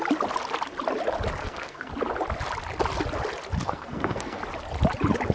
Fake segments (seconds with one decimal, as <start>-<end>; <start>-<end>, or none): 1.4-1.9; 3.6-4.4